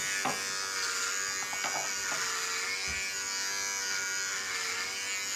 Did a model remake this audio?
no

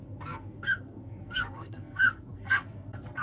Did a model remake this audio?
yes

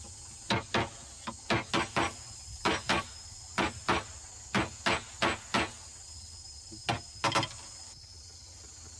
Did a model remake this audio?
no